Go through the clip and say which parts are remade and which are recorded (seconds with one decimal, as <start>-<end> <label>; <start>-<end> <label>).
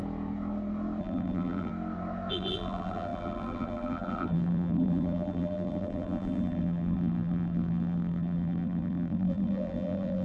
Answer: 0.0-1.0 recorded; 1.0-1.7 remade; 1.7-2.3 recorded; 2.3-10.2 remade